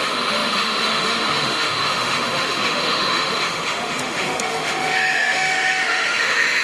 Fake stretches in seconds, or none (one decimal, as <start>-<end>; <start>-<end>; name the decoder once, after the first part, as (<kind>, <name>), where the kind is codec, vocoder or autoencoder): 0.0-6.6 (autoencoder, DAC-VAE)